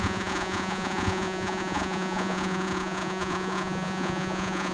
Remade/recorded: remade